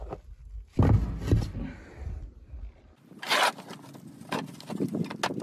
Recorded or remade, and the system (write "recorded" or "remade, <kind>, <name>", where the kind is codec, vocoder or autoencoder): recorded